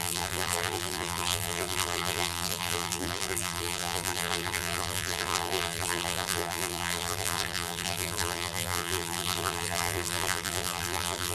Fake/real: fake